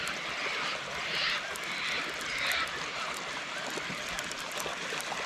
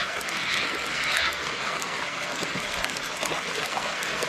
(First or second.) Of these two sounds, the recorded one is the first